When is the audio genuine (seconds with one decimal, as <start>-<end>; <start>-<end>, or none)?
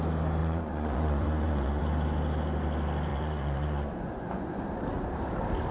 0.0-0.4; 1.8-3.1; 4.6-5.7